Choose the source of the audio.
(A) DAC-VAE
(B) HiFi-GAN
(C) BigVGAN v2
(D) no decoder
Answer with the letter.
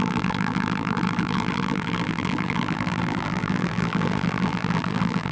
C